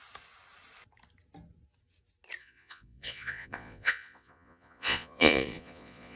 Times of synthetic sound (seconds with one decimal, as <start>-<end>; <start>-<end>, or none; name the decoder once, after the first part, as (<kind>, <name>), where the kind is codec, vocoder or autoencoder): 2.4-6.2 (vocoder, Vocos)